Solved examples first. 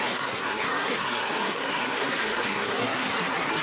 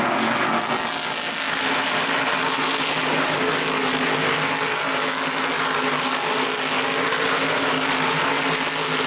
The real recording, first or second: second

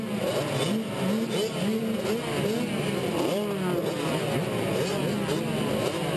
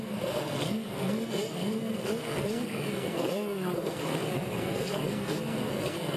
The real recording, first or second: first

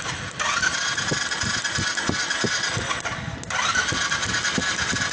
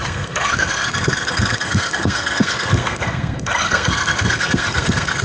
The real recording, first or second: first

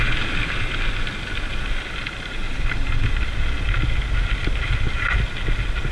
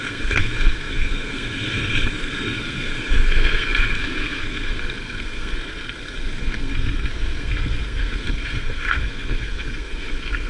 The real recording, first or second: first